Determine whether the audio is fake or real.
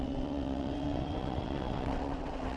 fake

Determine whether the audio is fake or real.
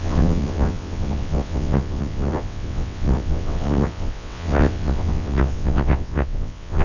fake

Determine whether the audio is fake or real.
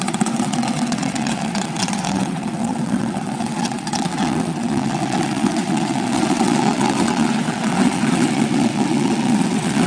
fake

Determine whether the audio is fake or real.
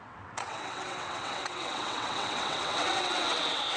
fake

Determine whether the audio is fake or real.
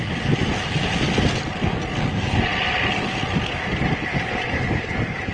real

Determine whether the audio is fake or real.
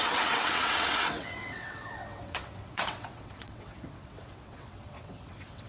fake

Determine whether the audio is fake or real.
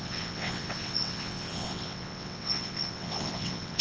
fake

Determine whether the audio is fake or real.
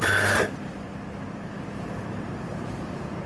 real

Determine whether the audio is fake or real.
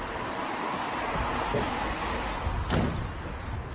real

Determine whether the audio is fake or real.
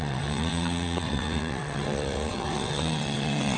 fake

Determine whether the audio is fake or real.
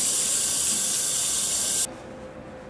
real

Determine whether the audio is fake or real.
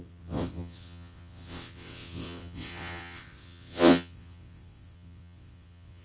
fake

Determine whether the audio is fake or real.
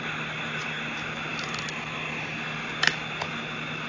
real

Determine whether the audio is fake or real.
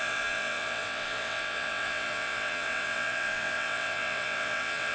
fake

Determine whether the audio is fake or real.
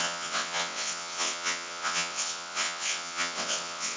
fake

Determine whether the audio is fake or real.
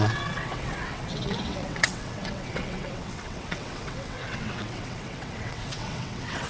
fake